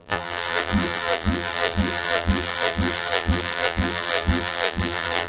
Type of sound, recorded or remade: remade